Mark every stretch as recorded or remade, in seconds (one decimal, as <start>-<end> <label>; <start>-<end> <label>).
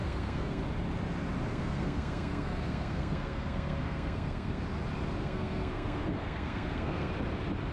0.0-0.6 remade; 0.6-1.5 recorded; 1.5-4.6 remade; 4.6-5.2 recorded; 5.2-7.1 remade; 7.1-7.7 recorded